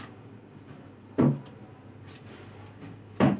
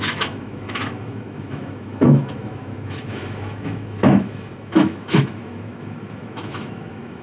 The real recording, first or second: first